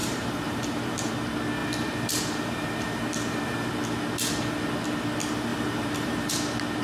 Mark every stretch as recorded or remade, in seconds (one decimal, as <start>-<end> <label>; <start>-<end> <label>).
0.0-1.1 remade; 1.1-1.6 recorded; 1.6-3.7 remade; 3.7-5.5 recorded; 5.5-6.3 remade; 6.3-6.8 recorded